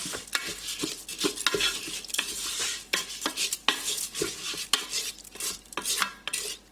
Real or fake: real